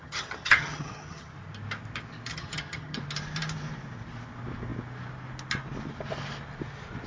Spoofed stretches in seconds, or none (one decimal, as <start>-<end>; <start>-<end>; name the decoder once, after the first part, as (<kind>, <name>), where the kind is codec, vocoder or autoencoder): 0.0-1.3 (vocoder, HiFi-GAN); 2.3-3.0